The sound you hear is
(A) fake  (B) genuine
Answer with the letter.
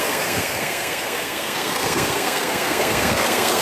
A